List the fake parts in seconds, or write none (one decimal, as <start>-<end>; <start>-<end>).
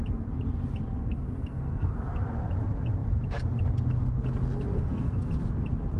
1.0-1.9; 4.7-5.3